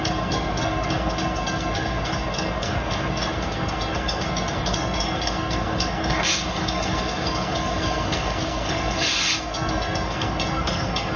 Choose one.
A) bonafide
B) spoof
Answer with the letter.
B